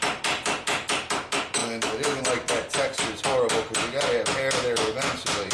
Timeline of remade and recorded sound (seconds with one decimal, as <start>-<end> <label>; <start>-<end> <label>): 0.0-1.6 recorded; 1.6-2.2 remade; 2.2-5.5 recorded